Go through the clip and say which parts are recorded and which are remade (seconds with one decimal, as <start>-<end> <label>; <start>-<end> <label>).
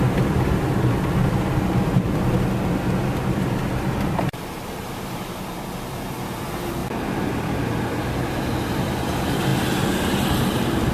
0.0-6.8 recorded; 6.8-7.6 remade; 7.6-10.9 recorded